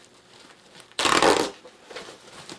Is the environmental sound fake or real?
fake